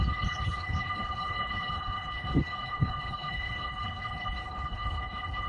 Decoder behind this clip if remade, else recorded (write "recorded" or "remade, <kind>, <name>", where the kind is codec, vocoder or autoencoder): remade, codec, HILCodec